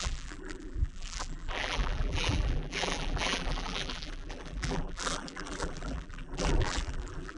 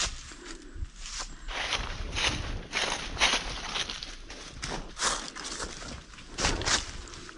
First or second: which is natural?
second